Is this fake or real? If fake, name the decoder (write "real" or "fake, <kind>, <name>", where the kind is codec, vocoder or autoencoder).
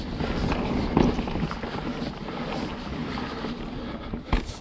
real